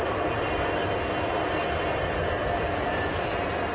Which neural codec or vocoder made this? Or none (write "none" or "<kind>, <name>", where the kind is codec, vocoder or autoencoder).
none